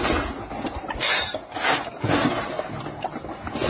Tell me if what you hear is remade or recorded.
recorded